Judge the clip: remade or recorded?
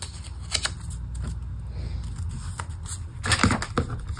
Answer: recorded